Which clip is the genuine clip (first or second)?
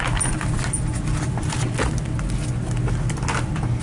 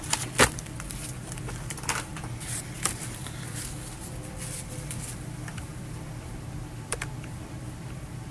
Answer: first